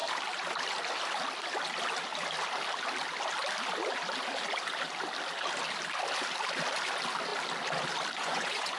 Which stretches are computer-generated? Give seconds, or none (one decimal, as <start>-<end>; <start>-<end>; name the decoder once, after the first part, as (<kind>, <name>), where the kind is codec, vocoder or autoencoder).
8.2-8.8 (vocoder, Vocos)